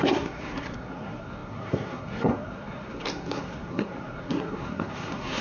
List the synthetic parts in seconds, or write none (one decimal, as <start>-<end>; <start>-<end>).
0.0-5.4